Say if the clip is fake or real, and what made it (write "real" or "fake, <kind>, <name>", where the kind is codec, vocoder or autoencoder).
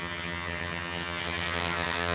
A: fake, vocoder, HiFi-GAN